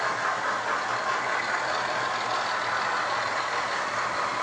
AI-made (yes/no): no